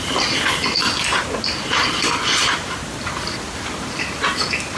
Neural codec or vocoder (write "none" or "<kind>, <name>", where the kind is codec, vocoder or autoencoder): none